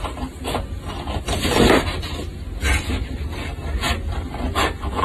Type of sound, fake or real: real